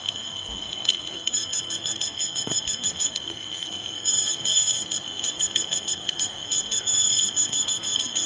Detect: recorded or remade remade